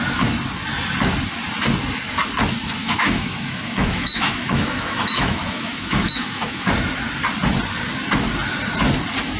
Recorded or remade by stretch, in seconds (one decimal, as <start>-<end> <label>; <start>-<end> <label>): 0.0-2.8 recorded; 2.8-6.7 remade; 6.7-9.4 recorded

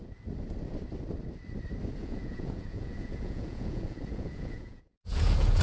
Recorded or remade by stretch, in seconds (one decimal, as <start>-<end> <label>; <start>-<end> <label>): 0.0-2.0 recorded; 2.0-5.6 remade

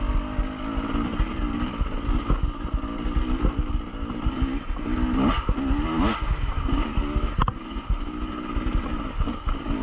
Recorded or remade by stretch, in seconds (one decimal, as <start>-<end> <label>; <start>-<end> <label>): 0.0-9.8 recorded

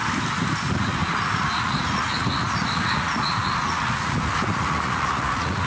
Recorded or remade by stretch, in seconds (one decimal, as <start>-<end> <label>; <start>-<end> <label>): 0.0-0.6 recorded; 0.6-5.7 remade

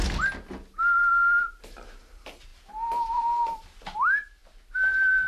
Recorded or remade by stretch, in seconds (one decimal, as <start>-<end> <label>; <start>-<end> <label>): 0.0-1.6 recorded; 1.6-2.5 remade; 2.5-3.1 recorded; 3.1-4.4 remade; 4.4-5.3 recorded